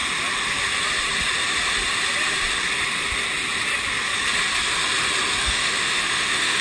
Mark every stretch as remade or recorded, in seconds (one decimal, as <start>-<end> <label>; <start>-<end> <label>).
0.0-5.4 recorded; 5.4-6.6 remade